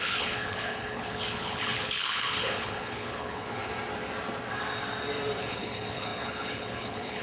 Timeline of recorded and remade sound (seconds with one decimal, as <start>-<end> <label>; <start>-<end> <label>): 0.0-3.7 remade; 3.7-5.4 recorded; 5.4-7.2 remade